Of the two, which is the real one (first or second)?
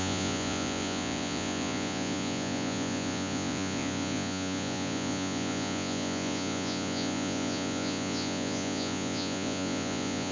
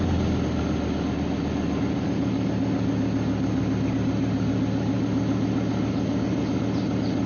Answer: second